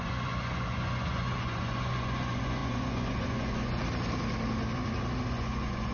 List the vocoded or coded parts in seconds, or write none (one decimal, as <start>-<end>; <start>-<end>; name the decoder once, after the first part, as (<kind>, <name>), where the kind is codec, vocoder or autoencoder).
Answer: 0.0-3.8 (vocoder, Vocos); 5.3-5.9